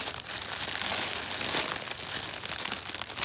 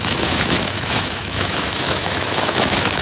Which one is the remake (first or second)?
second